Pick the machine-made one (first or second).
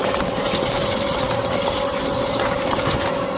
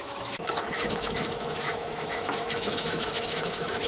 second